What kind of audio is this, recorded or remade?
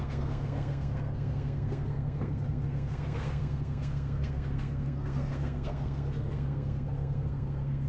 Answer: remade